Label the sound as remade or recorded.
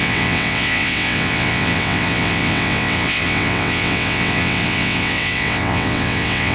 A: remade